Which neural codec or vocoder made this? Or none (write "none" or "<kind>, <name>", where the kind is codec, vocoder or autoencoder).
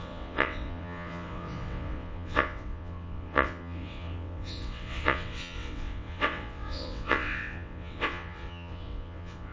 vocoder, WaveNeXt